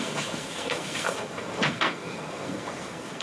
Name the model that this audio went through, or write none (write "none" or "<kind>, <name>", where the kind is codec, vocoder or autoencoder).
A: codec, SNAC